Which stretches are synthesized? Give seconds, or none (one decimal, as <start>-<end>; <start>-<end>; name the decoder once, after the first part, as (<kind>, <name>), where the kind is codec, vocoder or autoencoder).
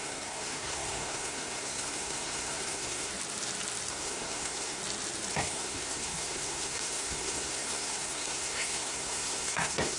0.0-3.1 (codec, SNAC); 3.9-4.8; 5.3-10.0